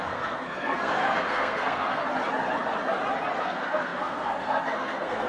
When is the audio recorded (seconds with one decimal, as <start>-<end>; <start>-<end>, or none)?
2.0-3.4